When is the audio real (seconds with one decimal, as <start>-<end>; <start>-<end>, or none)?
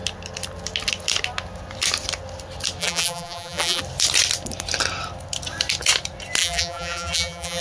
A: 0.0-2.8; 3.8-6.4